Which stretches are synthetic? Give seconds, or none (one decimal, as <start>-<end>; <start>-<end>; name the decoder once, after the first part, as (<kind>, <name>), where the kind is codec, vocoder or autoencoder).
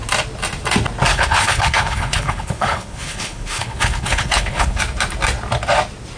1.1-4.8 (codec, HILCodec)